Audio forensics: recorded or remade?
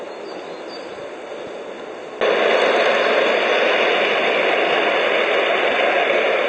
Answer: recorded